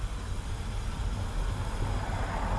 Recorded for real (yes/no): yes